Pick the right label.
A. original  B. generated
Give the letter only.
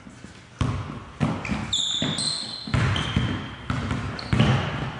A